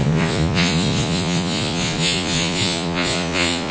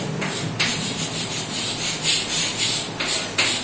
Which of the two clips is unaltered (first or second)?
second